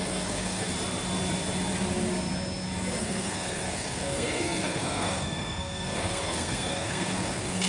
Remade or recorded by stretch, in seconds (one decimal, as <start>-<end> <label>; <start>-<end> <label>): 0.0-0.7 remade; 0.7-3.0 recorded; 3.0-7.7 remade